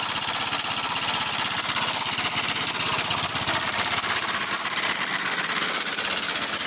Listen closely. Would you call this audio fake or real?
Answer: real